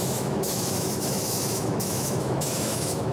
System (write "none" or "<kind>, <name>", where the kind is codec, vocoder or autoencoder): autoencoder, DAC-VAE